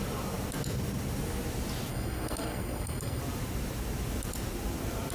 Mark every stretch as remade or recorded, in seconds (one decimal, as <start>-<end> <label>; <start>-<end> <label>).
0.0-1.9 recorded; 1.9-3.2 remade; 3.2-5.1 recorded